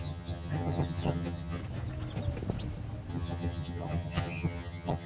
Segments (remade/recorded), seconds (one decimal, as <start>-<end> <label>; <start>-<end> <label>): 0.0-1.6 remade; 1.6-3.1 recorded; 3.1-5.1 remade